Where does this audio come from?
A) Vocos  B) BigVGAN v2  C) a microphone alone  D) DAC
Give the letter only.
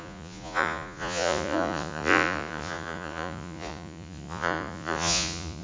A